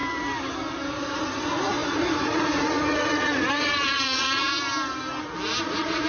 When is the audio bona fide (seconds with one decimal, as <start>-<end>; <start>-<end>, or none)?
0.0-0.9; 4.5-5.6